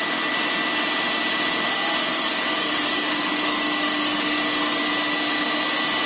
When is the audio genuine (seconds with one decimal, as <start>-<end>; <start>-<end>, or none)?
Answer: 0.0-2.1; 4.8-6.1